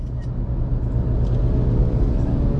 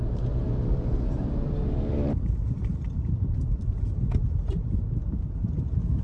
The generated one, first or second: second